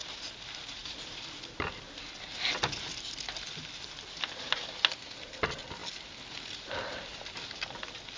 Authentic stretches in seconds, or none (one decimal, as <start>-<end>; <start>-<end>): 0.0-8.2